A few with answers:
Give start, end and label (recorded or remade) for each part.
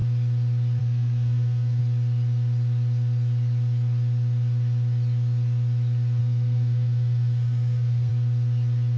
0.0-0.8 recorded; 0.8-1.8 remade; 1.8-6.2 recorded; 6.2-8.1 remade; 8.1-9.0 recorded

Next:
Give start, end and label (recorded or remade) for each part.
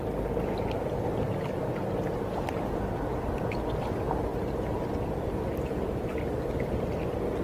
0.0-7.4 recorded